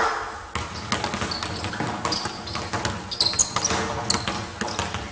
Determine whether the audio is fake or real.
real